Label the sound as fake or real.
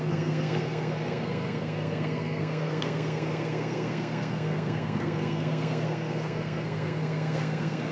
fake